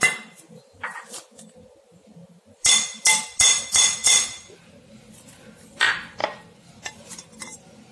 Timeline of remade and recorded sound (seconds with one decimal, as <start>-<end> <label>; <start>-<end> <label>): 0.0-4.0 remade; 4.0-5.7 recorded; 5.7-6.2 remade; 6.2-6.8 recorded; 6.8-7.9 remade